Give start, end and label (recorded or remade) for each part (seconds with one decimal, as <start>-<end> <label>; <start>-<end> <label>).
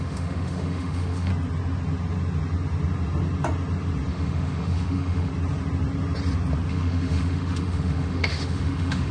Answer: 0.0-1.3 remade; 1.3-4.1 recorded; 4.1-5.3 remade; 5.3-6.7 recorded; 6.7-9.1 remade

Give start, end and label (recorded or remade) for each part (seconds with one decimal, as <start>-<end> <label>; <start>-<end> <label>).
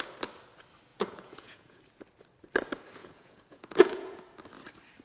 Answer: 0.0-0.9 recorded; 0.9-1.8 remade; 1.8-3.0 recorded; 3.0-4.2 remade; 4.2-5.0 recorded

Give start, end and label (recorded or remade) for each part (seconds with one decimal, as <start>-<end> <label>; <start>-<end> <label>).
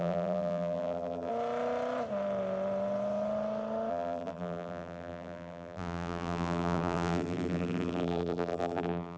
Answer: 0.0-1.3 remade; 1.3-3.9 recorded; 3.9-9.2 remade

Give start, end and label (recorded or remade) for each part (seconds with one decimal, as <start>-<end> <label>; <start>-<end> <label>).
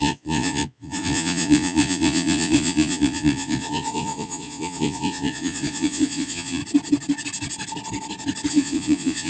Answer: 0.0-6.6 remade; 6.6-8.5 recorded; 8.5-9.3 remade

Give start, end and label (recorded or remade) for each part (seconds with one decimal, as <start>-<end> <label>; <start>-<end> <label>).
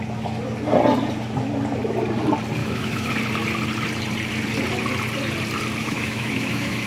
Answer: 0.0-2.6 recorded; 2.6-3.1 remade; 3.1-5.8 recorded; 5.8-6.9 remade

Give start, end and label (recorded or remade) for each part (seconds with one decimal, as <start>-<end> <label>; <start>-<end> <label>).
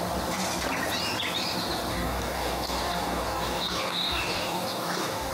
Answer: 0.0-1.9 recorded; 1.9-5.3 remade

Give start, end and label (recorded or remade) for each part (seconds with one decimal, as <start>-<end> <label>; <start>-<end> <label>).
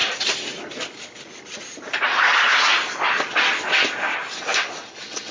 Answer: 0.0-5.3 recorded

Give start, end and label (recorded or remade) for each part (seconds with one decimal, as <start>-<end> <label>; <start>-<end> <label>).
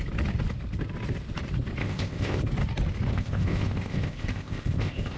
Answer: 0.0-1.8 recorded; 1.8-2.4 remade; 2.4-3.1 recorded; 3.1-5.2 remade